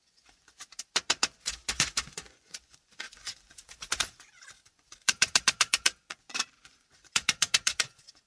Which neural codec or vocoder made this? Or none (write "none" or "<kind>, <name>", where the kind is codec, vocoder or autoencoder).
vocoder, Vocos